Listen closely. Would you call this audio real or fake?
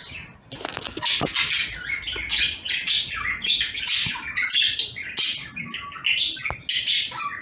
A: real